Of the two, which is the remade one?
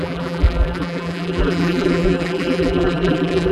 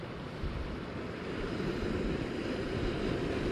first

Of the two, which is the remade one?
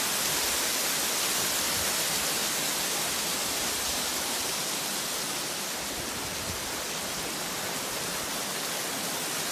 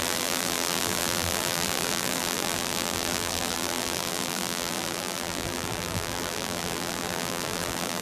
second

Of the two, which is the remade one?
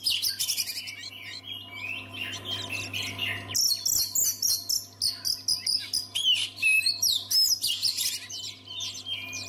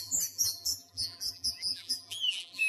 second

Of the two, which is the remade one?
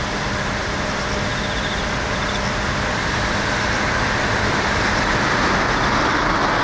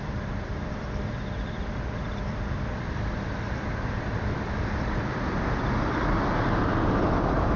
second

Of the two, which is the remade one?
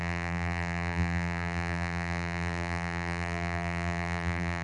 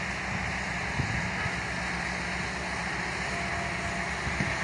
first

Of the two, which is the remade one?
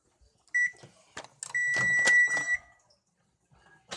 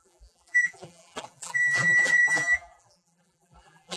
second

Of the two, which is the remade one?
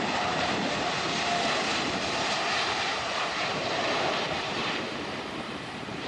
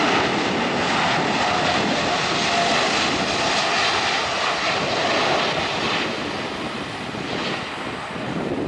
first